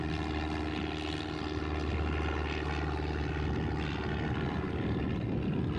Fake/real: real